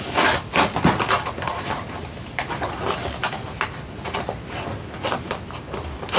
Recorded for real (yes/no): yes